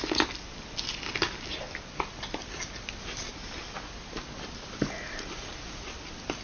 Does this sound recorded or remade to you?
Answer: recorded